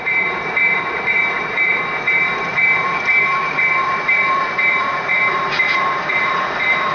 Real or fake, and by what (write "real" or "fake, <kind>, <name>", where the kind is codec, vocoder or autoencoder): fake, vocoder, Vocos